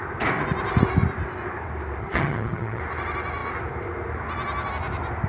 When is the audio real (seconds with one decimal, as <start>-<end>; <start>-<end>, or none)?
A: 0.0-2.0; 2.8-5.3

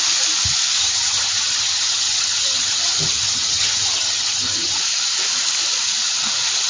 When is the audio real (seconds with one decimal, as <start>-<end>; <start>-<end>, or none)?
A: 0.0-0.8; 4.8-6.7

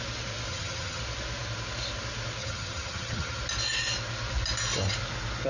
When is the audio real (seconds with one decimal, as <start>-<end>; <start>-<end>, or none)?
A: 0.0-0.5; 1.0-2.4; 3.4-5.5

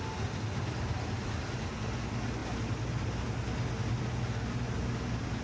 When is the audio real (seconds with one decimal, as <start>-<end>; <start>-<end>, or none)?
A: 0.0-5.4

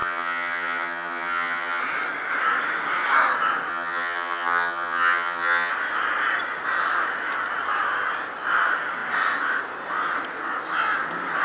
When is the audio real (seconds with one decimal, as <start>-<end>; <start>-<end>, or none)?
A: 1.8-3.7; 5.7-11.4

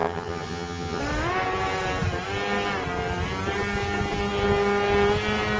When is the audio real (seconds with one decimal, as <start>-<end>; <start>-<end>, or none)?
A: 1.0-5.6

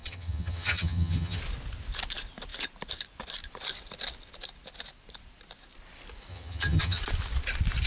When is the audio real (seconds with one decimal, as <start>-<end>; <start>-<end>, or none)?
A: 1.4-6.3; 7.0-7.9

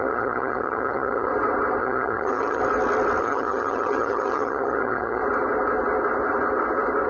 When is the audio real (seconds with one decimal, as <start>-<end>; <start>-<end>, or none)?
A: 1.3-1.8; 2.6-3.2; 5.2-7.1